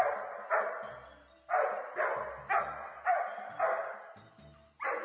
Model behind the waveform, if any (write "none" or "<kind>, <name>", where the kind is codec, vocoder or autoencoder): none